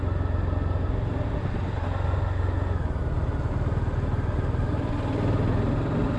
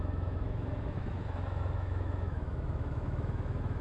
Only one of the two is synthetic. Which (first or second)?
second